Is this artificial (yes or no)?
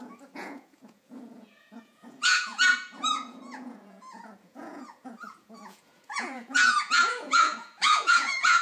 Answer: yes